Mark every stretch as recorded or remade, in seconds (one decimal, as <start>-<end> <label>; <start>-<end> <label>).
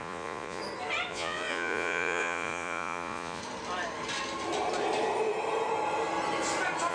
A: 0.0-0.6 remade; 0.6-1.1 recorded; 1.1-3.4 remade; 3.4-6.9 recorded